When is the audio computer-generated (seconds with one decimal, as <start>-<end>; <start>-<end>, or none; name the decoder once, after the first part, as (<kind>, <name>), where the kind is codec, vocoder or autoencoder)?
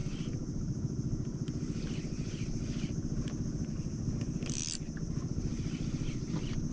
none